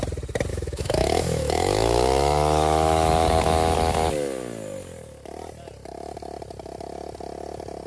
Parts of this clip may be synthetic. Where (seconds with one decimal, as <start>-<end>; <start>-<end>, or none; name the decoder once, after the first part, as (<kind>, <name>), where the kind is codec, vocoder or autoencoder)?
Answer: 0.5-4.1 (autoencoder, DAC-VAE)